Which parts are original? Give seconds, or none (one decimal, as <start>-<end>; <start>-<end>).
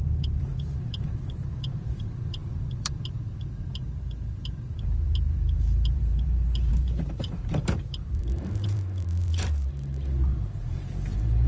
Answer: none